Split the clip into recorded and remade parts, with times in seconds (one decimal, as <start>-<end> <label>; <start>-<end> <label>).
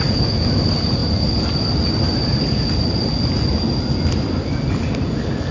0.0-5.5 recorded